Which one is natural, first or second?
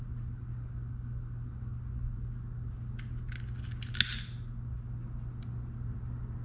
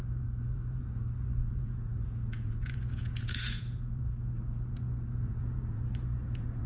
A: first